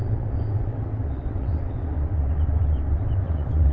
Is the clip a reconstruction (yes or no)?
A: yes